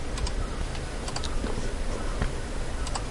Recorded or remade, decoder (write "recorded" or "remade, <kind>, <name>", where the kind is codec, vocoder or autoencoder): recorded